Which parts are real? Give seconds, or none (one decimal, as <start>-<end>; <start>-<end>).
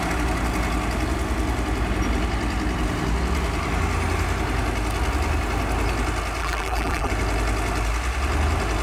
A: 0.0-6.4; 7.1-8.8